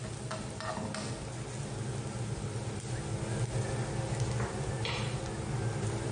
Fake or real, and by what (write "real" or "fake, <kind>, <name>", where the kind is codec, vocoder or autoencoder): real